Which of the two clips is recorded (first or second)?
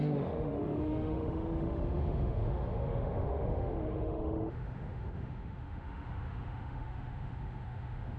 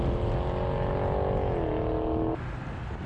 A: second